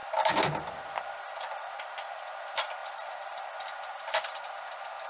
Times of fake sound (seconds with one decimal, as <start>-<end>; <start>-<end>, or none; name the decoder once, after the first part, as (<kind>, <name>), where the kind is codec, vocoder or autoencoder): none